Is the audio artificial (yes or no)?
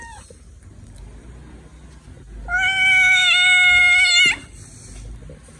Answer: no